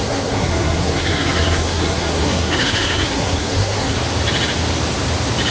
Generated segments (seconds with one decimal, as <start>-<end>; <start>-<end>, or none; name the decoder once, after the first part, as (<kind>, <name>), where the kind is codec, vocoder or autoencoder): 0.0-4.0 (codec, SNAC)